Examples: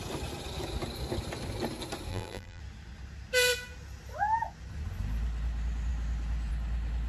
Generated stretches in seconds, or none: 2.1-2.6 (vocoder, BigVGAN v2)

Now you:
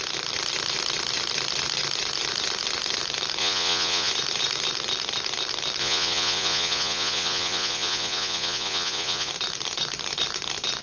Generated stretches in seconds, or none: 3.4-4.1 (vocoder, Vocos); 5.8-9.3

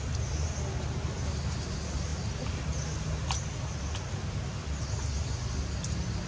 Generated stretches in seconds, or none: none